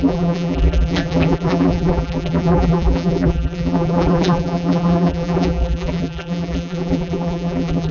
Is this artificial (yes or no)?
yes